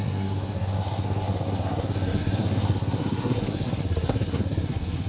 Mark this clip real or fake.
fake